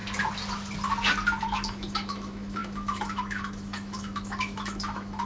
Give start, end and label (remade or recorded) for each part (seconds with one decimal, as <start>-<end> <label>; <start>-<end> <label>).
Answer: 0.0-1.4 recorded; 1.4-5.3 remade